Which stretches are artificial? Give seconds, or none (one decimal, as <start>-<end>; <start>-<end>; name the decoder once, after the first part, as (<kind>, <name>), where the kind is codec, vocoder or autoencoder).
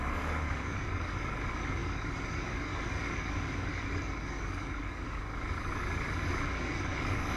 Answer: 0.0-7.4 (codec, DAC)